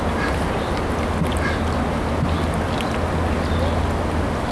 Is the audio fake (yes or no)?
no